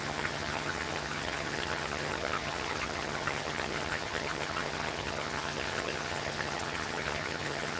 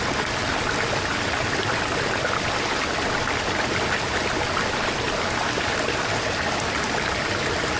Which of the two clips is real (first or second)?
second